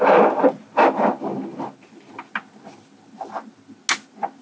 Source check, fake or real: real